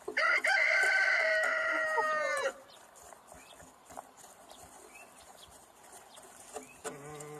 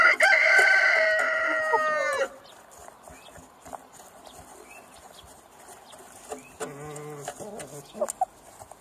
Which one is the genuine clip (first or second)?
second